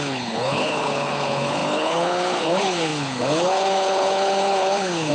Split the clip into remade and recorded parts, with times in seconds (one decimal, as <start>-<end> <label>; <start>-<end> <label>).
0.0-5.1 remade